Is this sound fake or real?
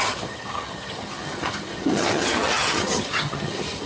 fake